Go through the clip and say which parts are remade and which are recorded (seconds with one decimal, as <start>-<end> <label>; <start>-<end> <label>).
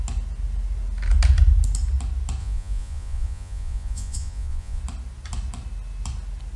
0.0-2.4 recorded; 2.4-4.8 remade; 4.8-6.6 recorded